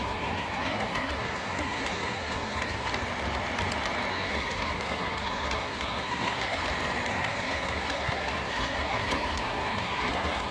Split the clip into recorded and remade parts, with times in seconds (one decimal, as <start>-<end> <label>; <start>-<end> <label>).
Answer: 0.0-2.9 remade; 2.9-4.1 recorded; 4.1-6.6 remade; 6.6-7.1 recorded; 7.1-10.5 remade